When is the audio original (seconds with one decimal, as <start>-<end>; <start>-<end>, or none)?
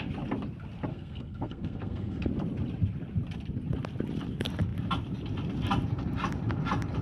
0.0-0.9; 2.3-7.0